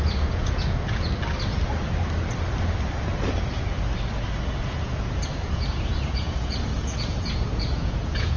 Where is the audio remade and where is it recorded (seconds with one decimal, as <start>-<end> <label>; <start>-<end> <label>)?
0.0-1.1 remade; 1.1-4.6 recorded; 4.6-8.4 remade